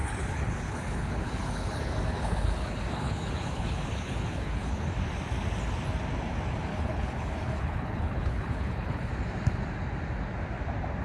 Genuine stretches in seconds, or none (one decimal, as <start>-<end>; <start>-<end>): 4.9-6.7; 9.1-11.0